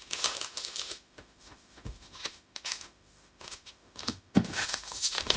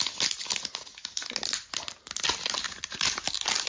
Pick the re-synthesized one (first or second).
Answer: first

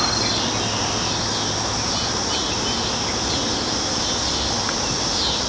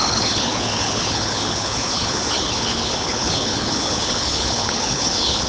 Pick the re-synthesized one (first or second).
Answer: second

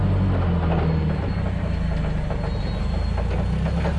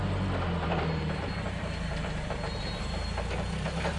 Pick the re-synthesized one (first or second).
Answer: second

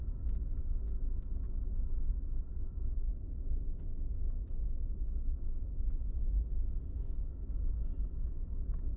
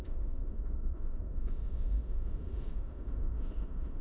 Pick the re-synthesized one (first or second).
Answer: second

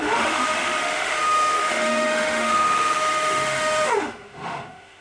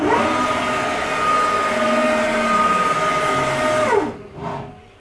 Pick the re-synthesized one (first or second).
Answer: first